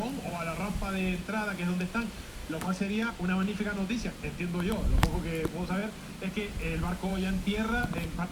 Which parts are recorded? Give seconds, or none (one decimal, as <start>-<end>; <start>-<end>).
0.0-2.4; 3.1-7.1; 7.8-8.3